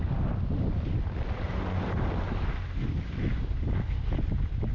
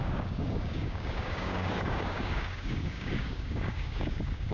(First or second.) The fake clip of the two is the second